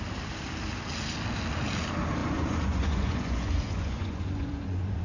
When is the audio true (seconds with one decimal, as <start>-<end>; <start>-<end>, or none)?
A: 0.0-2.2